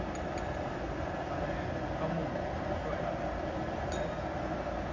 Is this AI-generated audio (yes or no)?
no